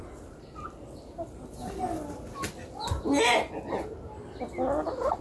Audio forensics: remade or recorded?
recorded